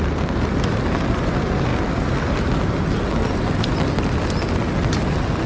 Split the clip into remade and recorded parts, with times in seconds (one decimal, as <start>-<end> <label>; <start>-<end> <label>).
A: 0.0-5.5 recorded